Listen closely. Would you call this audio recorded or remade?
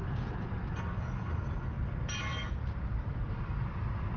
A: recorded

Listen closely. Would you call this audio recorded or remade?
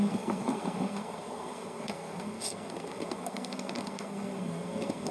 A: remade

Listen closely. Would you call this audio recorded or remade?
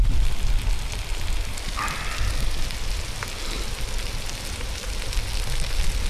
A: recorded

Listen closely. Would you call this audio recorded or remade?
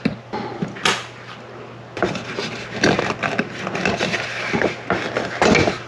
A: recorded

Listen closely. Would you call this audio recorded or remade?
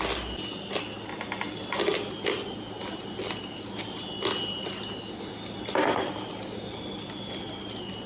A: recorded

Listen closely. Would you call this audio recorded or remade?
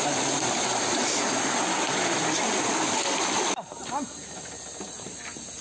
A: recorded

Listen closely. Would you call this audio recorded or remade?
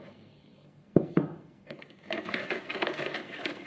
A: remade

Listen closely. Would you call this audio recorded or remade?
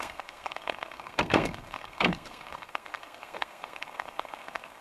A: remade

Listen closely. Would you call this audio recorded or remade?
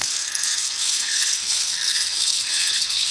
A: remade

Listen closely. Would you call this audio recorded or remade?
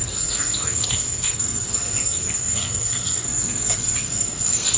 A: remade